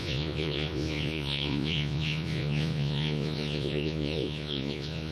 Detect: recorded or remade remade